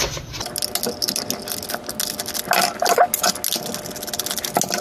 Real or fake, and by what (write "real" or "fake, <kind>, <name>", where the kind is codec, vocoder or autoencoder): real